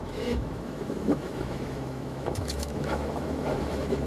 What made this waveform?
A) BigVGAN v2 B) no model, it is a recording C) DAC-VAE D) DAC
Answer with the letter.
C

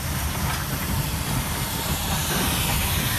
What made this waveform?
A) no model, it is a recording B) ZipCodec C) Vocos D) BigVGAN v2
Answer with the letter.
A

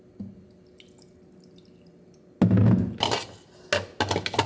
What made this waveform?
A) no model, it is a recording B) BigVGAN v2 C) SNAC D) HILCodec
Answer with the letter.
A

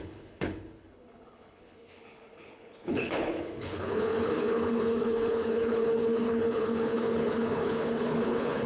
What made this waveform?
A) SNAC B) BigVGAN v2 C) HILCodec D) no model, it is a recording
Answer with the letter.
C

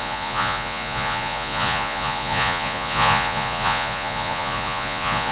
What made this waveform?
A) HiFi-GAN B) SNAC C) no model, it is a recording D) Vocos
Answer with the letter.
D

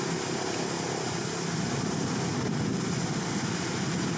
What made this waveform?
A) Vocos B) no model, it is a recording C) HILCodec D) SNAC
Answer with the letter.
B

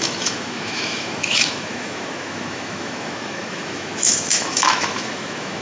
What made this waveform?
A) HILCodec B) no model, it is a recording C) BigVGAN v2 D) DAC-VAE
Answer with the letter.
D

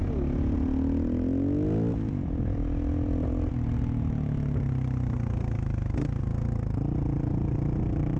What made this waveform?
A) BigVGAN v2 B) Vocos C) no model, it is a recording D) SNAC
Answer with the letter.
C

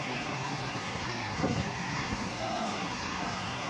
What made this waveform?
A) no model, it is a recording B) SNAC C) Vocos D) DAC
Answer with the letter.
B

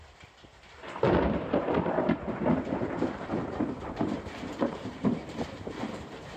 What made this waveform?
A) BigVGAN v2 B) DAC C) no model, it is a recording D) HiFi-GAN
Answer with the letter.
A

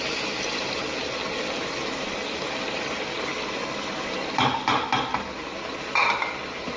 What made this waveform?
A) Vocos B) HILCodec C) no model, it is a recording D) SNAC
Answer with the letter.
C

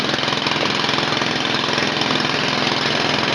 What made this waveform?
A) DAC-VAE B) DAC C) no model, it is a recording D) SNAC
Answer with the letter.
C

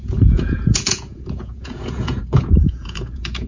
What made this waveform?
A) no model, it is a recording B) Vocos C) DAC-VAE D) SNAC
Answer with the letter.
B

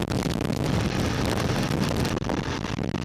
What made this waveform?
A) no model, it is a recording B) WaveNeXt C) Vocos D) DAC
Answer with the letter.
A